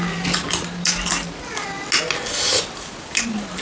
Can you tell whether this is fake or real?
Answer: real